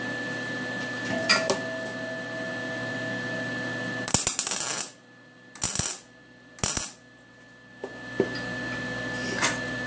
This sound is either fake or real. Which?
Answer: real